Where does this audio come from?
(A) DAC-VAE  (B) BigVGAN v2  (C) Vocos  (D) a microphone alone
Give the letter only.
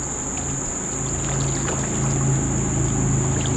D